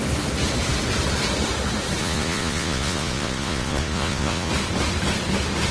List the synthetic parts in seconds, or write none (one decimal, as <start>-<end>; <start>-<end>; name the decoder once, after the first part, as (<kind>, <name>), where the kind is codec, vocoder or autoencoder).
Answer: 2.0-4.5 (vocoder, Vocos)